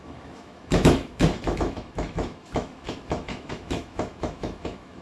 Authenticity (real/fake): fake